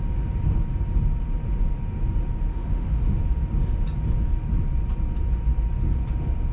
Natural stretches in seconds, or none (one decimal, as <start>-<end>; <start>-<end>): 0.0-2.5; 3.2-6.5